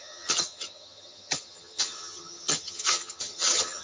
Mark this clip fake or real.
fake